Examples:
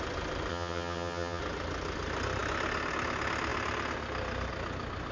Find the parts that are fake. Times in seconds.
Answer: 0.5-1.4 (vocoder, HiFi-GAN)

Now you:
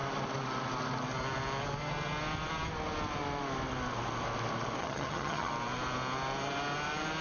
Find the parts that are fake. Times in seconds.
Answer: 4.8-5.5 (vocoder, HiFi-GAN)

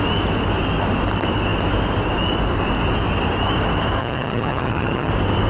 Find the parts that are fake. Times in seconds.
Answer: 4.0-5.1 (vocoder, HiFi-GAN)

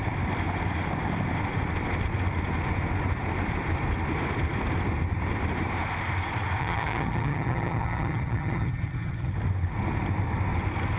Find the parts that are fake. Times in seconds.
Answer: 6.6-9.3 (vocoder, HiFi-GAN)

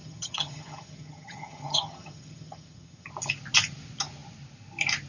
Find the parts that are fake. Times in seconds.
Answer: 0.0-3.1 (vocoder, HiFi-GAN)